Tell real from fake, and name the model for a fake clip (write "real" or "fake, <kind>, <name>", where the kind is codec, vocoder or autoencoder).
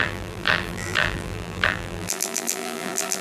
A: fake, vocoder, BigVGAN v2